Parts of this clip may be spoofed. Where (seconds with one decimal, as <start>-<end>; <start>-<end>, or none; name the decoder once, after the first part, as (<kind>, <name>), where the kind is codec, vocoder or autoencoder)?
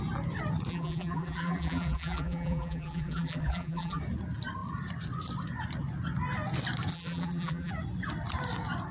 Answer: 0.7-4.0 (vocoder, BigVGAN v2); 6.9-7.7